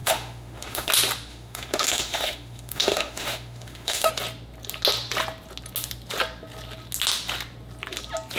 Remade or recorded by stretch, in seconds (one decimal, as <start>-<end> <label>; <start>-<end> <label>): 0.0-0.9 remade; 0.9-1.3 recorded; 1.3-4.1 remade; 4.1-8.4 recorded